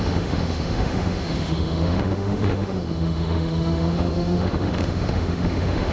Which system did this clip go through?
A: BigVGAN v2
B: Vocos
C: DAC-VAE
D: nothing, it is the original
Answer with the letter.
C